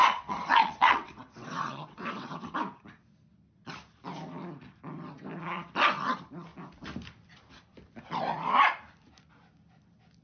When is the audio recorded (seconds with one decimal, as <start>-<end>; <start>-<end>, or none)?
2.6-10.2